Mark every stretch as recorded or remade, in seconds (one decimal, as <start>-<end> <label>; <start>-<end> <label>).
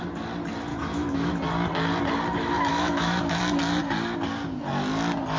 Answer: 0.0-0.7 recorded; 0.7-1.3 remade; 1.3-2.7 recorded; 2.7-3.4 remade; 3.4-5.4 recorded